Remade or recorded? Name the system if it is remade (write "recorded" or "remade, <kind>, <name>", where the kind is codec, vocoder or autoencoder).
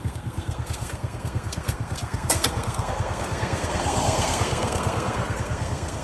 remade, codec, SNAC